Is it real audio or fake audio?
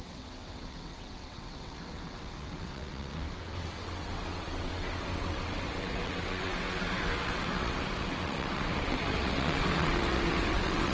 fake